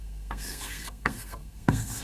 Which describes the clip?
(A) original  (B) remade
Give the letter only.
B